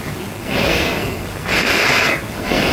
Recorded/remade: remade